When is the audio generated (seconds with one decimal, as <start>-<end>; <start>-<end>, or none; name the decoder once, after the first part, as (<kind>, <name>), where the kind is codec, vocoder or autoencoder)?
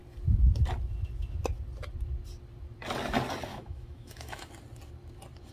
3.5-4.5 (autoencoder, DAC-VAE)